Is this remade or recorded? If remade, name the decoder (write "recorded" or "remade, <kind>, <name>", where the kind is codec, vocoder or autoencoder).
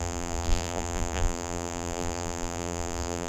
remade, vocoder, BigVGAN v2